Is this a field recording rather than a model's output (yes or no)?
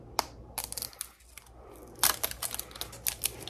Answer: yes